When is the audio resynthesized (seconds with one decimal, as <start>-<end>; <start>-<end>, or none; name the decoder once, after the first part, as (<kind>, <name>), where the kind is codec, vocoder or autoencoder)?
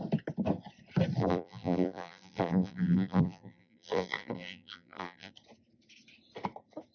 1.2-5.3 (vocoder, BigVGAN v2)